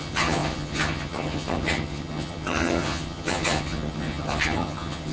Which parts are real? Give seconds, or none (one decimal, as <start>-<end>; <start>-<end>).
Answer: none